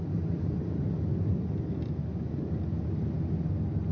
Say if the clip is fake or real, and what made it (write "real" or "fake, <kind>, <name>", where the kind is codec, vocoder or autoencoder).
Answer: real